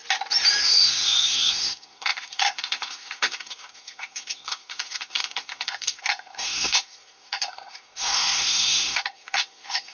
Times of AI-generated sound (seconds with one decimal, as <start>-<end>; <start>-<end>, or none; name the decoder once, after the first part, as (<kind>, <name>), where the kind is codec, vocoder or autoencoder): 0.6-9.9 (codec, SNAC)